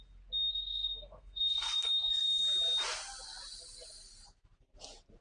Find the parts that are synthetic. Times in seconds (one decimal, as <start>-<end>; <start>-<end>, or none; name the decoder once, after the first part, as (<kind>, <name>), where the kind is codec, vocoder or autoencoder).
0.5-2.4 (codec, SNAC)